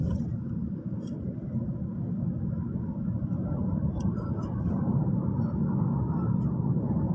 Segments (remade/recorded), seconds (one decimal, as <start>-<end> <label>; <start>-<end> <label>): 0.0-1.9 remade; 1.9-3.6 recorded; 3.6-5.2 remade; 5.2-6.6 recorded; 6.6-7.1 remade